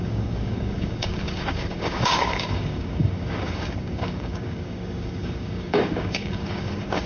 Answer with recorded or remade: remade